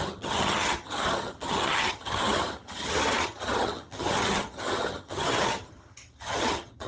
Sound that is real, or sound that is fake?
fake